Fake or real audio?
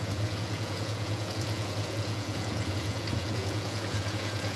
fake